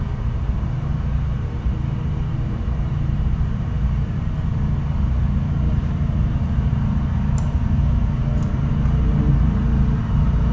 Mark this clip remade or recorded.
remade